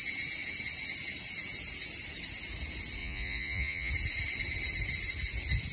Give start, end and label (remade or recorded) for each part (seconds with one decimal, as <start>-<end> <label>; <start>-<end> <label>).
0.0-3.0 recorded; 3.0-3.9 remade; 3.9-5.7 recorded